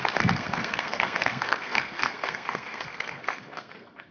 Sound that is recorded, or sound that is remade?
remade